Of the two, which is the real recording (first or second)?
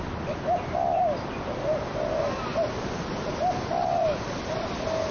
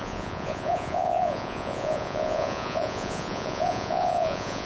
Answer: first